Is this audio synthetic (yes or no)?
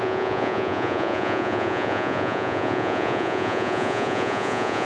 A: yes